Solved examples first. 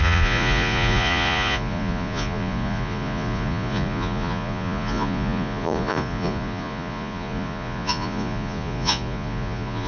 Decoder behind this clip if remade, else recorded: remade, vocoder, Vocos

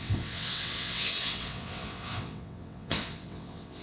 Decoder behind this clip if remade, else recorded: remade, vocoder, WaveNeXt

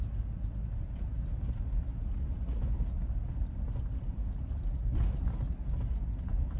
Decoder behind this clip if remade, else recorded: recorded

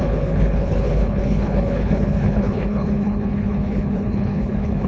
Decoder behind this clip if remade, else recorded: remade, codec, HILCodec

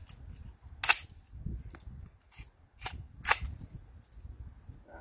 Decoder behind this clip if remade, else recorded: recorded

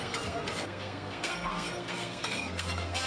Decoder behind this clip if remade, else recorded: remade, codec, SNAC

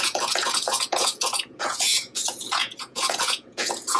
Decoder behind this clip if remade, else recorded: remade, vocoder, Vocos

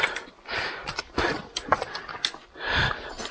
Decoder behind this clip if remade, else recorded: recorded